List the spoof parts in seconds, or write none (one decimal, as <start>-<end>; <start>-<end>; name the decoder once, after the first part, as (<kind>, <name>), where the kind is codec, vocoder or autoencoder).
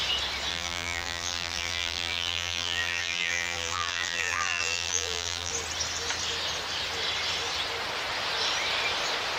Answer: 0.5-5.5 (vocoder, BigVGAN v2)